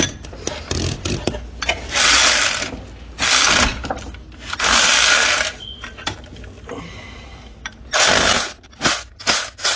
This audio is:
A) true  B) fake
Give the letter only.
A